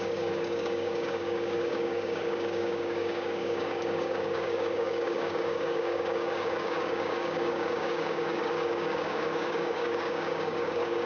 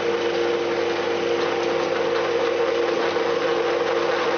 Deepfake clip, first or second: first